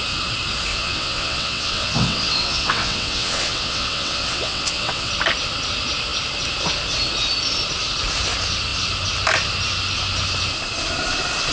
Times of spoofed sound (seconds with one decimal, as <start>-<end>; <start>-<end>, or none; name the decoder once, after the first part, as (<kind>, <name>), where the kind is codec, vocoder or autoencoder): 0.7-5.1 (vocoder, WaveNeXt)